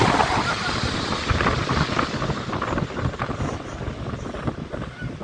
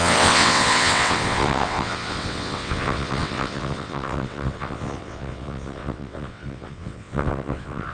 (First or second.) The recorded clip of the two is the first